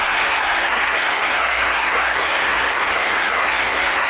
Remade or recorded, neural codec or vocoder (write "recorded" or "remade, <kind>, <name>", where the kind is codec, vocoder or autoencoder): remade, codec, SNAC